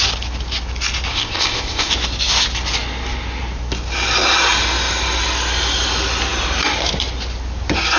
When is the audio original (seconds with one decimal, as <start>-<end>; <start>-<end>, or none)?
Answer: 0.0-1.1; 1.9-8.0